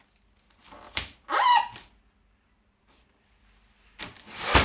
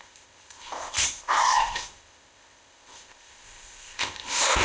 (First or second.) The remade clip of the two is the second